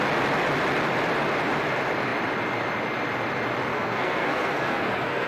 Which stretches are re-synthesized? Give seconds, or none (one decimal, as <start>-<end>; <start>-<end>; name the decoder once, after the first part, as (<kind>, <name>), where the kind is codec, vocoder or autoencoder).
3.7-5.3 (codec, SNAC)